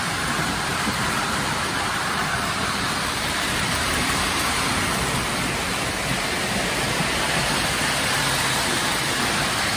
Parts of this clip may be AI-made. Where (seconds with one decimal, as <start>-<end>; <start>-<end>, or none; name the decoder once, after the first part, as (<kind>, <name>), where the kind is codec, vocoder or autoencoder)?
0.7-4.8 (vocoder, BigVGAN v2)